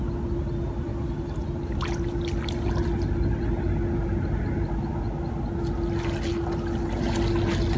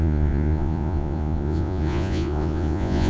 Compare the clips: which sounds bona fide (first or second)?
first